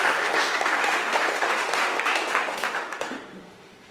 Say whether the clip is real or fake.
fake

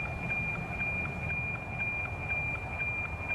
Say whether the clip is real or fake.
real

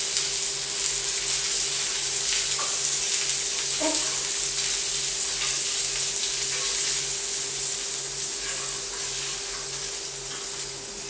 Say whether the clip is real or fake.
real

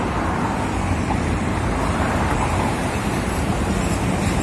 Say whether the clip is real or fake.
fake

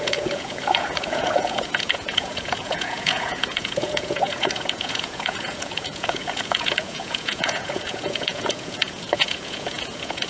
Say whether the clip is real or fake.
fake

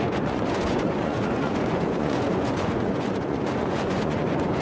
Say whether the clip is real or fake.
fake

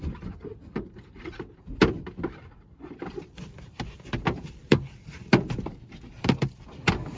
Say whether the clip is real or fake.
fake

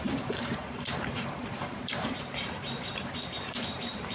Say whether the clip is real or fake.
fake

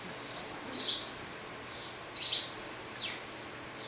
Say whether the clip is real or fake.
real